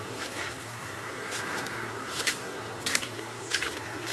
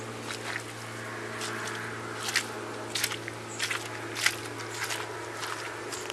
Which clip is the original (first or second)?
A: second